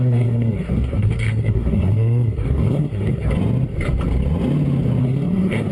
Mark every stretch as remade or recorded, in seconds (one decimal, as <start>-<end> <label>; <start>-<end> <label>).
0.0-3.3 remade; 3.3-5.0 recorded; 5.0-5.7 remade